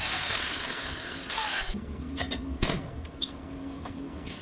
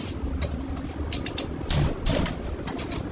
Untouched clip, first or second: second